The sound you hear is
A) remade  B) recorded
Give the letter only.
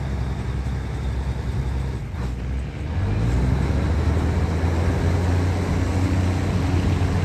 B